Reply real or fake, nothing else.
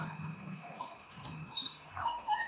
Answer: fake